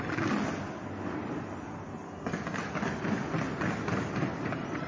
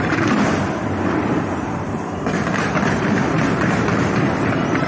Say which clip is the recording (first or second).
first